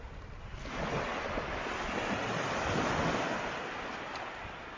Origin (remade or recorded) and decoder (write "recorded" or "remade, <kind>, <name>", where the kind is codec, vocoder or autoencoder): recorded